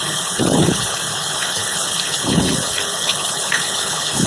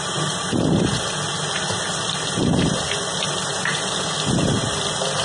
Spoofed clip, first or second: first